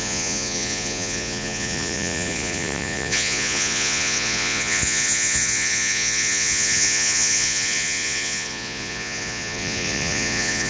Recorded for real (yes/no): no